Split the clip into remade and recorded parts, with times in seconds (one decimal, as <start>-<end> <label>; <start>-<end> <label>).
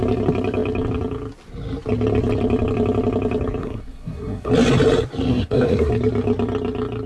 0.0-3.6 recorded; 3.6-4.5 remade; 4.5-5.3 recorded; 5.3-5.9 remade; 5.9-7.1 recorded